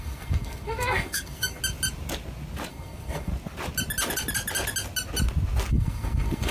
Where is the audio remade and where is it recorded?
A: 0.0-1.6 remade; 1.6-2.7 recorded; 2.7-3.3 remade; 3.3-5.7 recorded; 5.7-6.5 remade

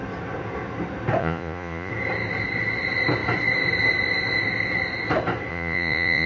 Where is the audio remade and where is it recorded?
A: 0.0-1.2 recorded; 1.2-1.9 remade; 1.9-5.5 recorded; 5.5-6.3 remade

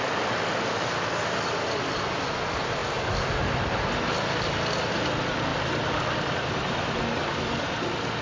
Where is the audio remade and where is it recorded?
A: 0.0-8.2 recorded

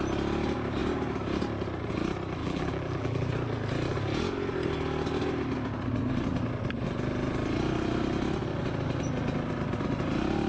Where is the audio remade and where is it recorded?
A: 0.0-2.4 recorded; 2.4-3.3 remade; 3.3-10.5 recorded

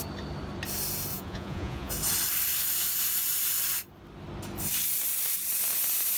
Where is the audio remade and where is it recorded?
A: 0.0-1.1 recorded; 1.1-1.9 remade; 1.9-6.2 recorded

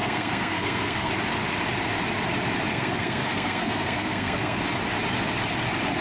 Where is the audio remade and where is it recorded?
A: 0.0-1.1 remade; 1.1-2.7 recorded; 2.7-4.6 remade; 4.6-6.0 recorded